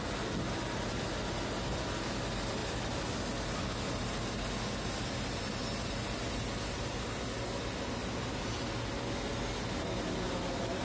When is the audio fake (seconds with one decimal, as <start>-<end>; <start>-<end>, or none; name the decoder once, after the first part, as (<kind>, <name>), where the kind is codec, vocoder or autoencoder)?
8.0-8.5 (vocoder, BigVGAN v2)